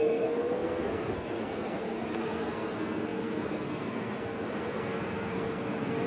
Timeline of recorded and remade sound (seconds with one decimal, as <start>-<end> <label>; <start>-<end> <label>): 0.0-6.1 remade